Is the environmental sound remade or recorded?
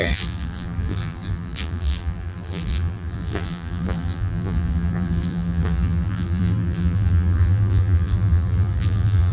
remade